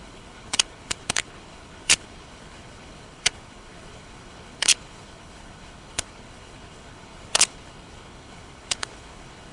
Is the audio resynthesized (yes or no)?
yes